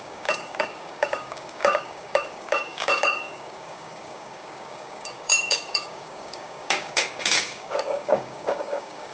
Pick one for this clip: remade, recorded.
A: remade